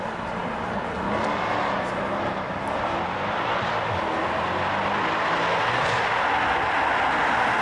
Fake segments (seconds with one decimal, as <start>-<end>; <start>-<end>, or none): none